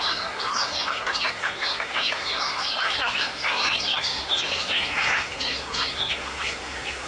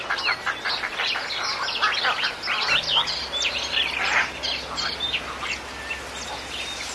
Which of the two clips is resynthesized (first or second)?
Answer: first